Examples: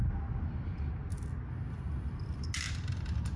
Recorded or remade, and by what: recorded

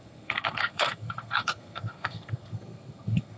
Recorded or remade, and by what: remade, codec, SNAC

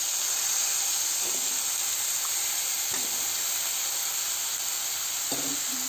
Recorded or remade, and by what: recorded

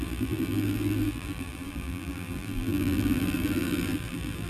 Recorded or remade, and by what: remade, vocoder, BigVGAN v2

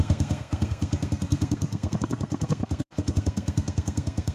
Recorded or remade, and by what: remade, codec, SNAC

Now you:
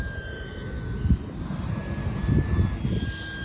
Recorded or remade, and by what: recorded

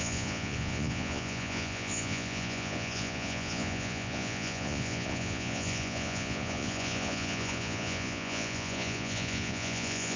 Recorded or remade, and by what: remade, vocoder, Vocos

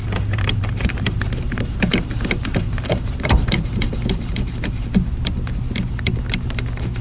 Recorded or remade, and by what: remade, vocoder, BigVGAN v2